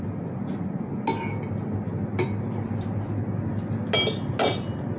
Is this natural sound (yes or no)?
yes